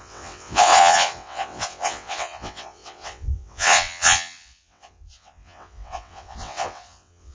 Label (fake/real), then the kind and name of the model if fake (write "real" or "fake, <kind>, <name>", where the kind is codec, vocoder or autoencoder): fake, vocoder, WaveNeXt